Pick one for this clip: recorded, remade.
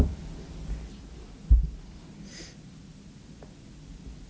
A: recorded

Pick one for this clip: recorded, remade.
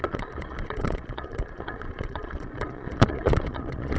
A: remade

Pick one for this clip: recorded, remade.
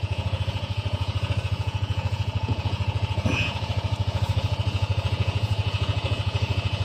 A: remade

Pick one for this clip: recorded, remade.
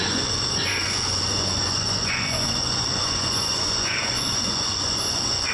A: remade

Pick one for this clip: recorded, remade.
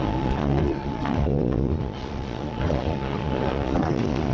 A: remade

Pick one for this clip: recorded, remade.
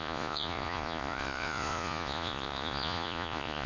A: remade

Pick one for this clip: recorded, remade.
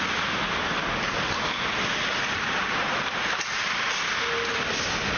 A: recorded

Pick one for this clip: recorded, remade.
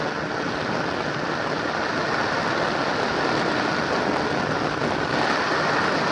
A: recorded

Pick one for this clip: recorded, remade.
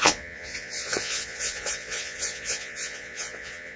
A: remade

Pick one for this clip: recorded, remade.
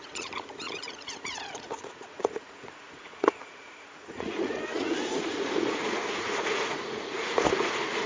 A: remade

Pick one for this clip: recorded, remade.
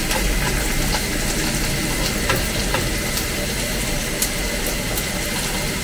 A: recorded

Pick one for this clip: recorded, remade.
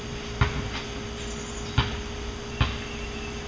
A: recorded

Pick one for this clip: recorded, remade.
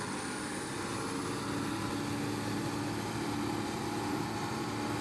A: recorded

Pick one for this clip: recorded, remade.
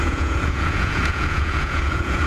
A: remade